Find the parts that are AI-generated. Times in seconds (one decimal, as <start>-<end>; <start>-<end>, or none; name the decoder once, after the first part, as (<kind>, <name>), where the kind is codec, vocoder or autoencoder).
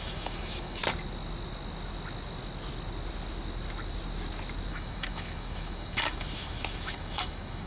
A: 0.0-0.8 (autoencoder, DAC-VAE); 4.7-7.7